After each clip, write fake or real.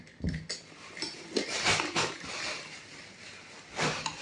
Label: real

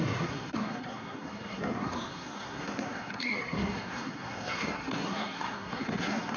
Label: fake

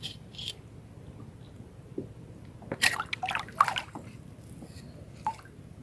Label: real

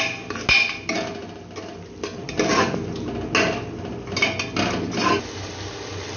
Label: real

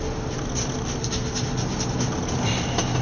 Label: real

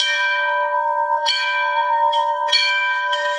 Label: fake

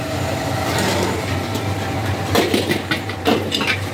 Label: fake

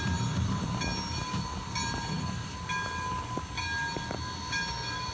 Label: real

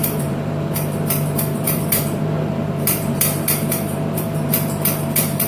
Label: fake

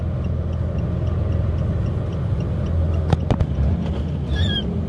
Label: real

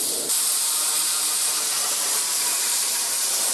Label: fake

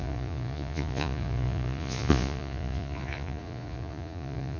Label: fake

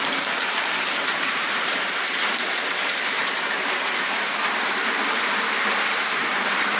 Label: fake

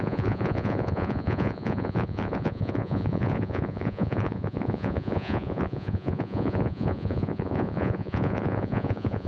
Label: fake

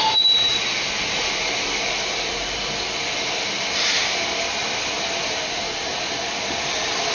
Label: real